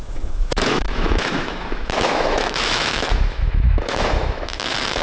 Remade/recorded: remade